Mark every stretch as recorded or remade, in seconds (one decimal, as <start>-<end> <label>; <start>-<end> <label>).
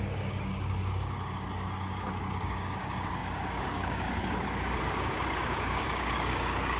0.0-6.8 remade